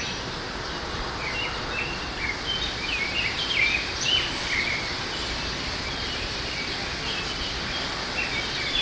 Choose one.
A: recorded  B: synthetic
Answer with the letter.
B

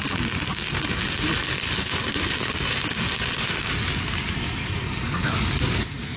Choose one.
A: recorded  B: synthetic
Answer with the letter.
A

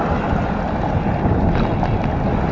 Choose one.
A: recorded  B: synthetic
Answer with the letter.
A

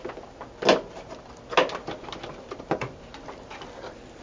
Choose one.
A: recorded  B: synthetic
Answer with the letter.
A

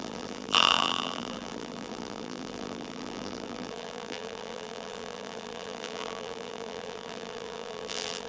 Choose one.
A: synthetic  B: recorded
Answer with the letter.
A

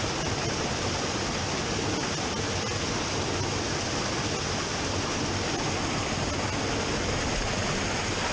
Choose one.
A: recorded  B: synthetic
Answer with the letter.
A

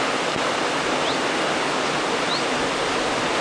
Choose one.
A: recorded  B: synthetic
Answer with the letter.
A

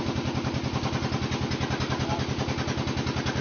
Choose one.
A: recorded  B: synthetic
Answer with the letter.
A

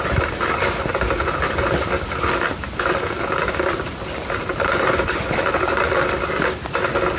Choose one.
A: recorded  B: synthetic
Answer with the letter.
B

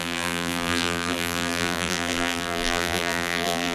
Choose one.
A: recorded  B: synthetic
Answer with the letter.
B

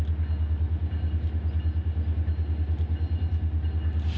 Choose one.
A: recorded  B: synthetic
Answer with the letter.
A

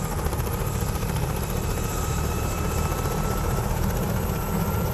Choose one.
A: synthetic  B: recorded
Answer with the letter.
A